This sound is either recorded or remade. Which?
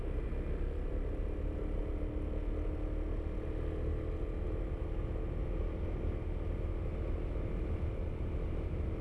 recorded